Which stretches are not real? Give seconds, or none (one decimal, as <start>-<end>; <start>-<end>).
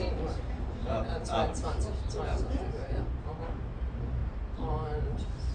0.8-3.6; 4.2-5.5